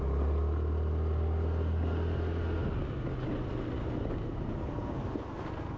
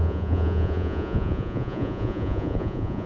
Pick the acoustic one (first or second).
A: first